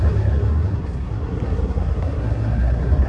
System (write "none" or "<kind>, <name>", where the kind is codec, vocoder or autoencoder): codec, SNAC